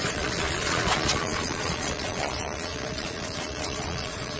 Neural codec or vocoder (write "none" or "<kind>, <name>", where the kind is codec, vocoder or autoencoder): vocoder, Vocos